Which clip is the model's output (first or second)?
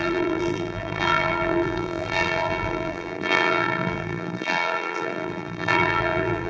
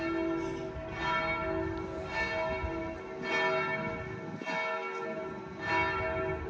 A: first